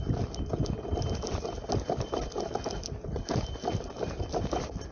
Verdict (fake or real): real